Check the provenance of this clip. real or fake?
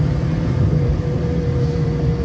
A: real